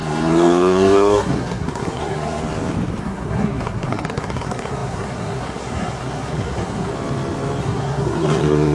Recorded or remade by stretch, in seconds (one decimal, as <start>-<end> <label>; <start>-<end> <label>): 0.0-2.4 remade; 2.4-3.0 recorded; 3.0-6.9 remade; 6.9-7.6 recorded; 7.6-8.7 remade